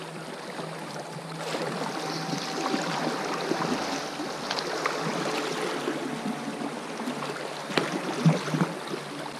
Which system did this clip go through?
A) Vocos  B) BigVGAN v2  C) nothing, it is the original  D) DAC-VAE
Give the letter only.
C